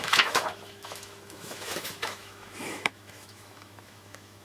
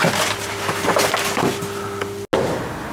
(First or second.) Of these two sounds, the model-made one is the first